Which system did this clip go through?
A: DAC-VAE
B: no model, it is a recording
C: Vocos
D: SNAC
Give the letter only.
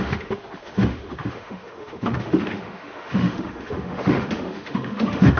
A